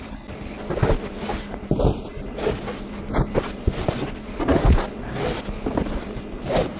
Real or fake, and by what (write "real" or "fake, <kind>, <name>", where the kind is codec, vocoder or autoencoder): real